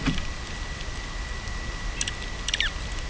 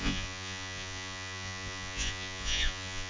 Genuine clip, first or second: first